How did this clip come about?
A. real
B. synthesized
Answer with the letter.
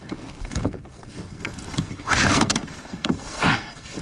B